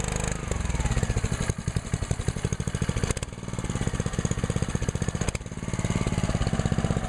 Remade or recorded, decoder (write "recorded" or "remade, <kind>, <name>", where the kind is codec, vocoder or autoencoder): recorded